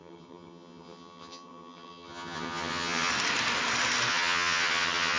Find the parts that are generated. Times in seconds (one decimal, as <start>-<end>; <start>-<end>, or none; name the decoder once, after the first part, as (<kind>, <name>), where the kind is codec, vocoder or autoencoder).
0.0-3.1 (vocoder, HiFi-GAN); 4.1-5.2